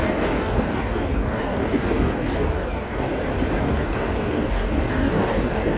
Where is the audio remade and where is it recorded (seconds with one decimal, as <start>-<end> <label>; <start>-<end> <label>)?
0.0-3.1 remade; 3.1-3.6 recorded; 3.6-5.8 remade